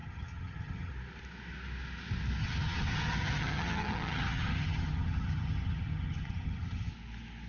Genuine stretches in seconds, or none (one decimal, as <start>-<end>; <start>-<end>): 0.9-2.4; 6.9-7.5